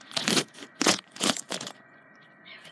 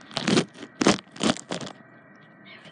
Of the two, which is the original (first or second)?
second